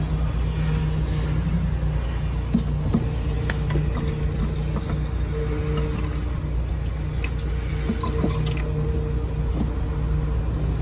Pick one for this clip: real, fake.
real